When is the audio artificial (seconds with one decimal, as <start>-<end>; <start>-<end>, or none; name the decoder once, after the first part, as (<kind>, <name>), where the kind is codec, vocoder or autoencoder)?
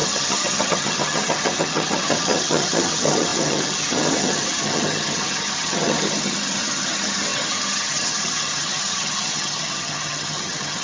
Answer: 0.0-10.8 (vocoder, HiFi-GAN)